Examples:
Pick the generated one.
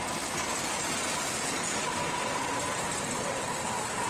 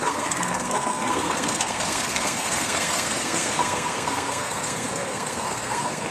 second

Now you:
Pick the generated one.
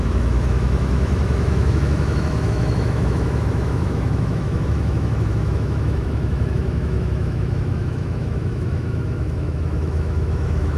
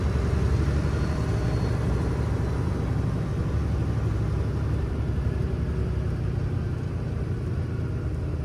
first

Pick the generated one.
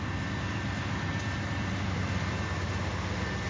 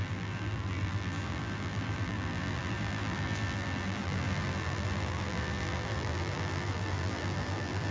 second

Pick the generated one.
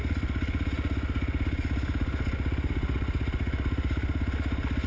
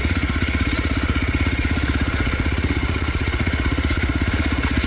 second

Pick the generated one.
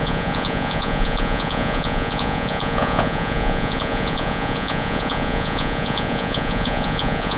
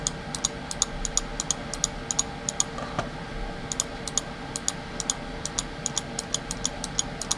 first